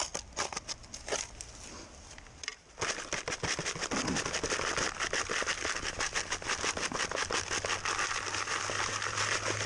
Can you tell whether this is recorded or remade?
recorded